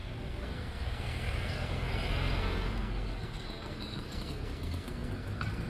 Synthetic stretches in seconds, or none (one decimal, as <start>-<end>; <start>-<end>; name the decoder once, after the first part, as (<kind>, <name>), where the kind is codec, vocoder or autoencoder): 0.0-5.7 (codec, SNAC)